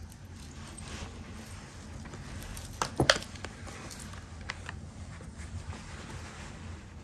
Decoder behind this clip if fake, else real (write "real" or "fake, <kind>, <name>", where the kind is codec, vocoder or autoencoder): real